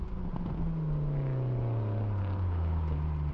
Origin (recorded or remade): recorded